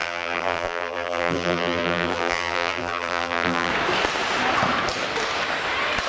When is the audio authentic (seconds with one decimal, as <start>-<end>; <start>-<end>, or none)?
3.7-6.1